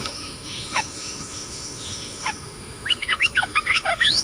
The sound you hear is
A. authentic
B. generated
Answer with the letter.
B